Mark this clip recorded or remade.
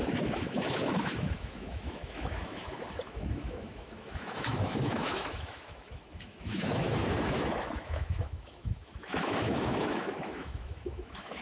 remade